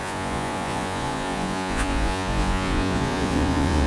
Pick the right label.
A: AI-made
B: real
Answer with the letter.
A